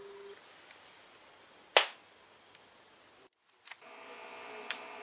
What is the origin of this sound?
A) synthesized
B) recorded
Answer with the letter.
B